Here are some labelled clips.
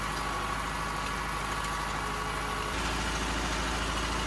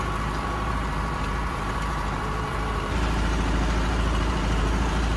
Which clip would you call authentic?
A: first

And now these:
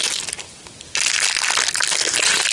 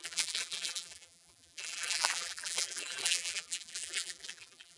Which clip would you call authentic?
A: first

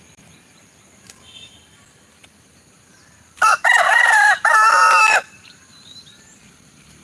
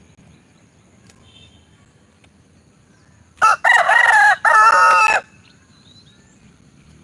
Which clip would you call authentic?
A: second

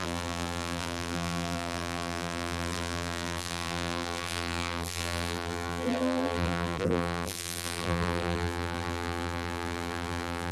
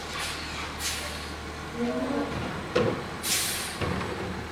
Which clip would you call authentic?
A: second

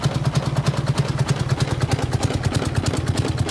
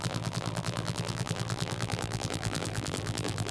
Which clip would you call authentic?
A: first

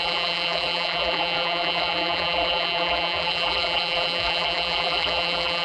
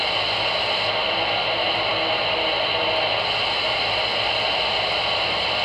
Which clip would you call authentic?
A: second